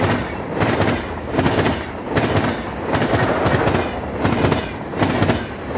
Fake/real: real